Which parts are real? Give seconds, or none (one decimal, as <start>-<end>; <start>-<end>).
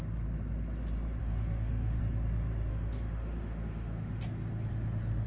0.0-1.2; 2.0-2.7; 4.2-5.3